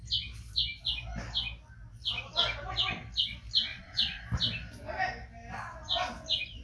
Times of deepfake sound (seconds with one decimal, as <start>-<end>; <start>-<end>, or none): 3.7-4.2